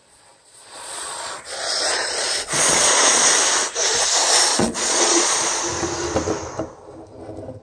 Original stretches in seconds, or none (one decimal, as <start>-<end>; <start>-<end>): 3.3-4.5; 5.6-7.6

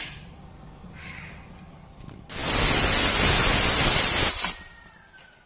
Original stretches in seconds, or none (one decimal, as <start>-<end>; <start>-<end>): 0.0-5.5

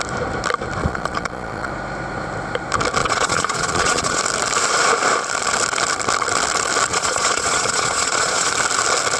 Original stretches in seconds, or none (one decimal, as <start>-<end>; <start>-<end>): 0.0-0.8; 1.7-3.0; 4.2-6.9; 8.5-9.2

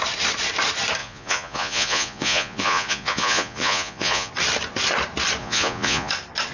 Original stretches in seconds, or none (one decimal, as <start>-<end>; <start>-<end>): 0.0-1.0; 4.3-5.4; 6.1-6.5

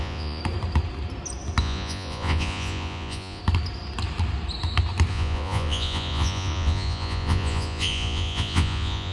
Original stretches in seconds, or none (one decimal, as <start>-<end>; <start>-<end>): 0.4-1.6; 3.4-5.1

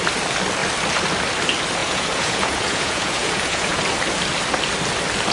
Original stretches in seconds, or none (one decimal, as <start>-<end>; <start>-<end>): 0.0-1.8; 3.8-5.3

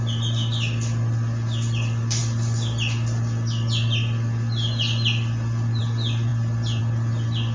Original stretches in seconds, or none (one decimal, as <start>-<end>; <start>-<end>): 0.0-7.5